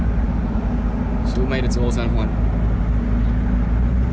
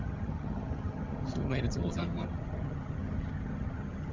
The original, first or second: first